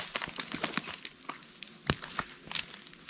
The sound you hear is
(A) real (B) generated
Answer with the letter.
A